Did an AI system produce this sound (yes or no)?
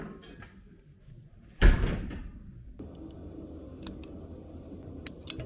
no